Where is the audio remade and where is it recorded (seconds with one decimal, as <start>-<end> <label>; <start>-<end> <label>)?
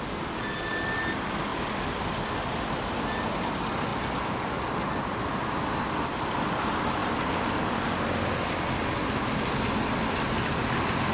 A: 0.0-11.1 recorded